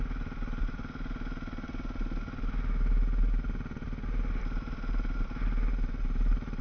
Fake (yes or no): no